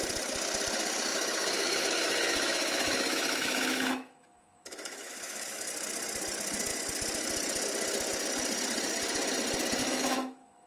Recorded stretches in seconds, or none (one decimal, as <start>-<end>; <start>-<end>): 0.0-1.1; 5.7-9.8